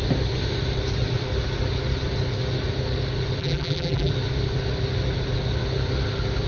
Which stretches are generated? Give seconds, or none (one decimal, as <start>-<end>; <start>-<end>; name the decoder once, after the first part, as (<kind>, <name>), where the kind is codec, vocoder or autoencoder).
3.4-4.1 (vocoder, BigVGAN v2)